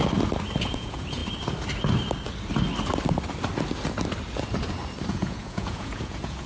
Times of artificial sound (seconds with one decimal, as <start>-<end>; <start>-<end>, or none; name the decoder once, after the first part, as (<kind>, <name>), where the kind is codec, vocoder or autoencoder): 0.6-1.2 (vocoder, Vocos); 5.1-6.5